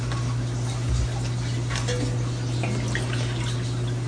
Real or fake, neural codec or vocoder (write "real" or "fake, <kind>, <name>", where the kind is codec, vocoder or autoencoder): real